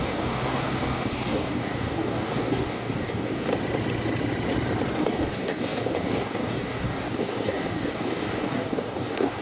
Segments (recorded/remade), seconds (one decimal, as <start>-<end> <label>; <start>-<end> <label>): 0.0-3.5 remade; 3.5-5.0 recorded; 5.0-9.4 remade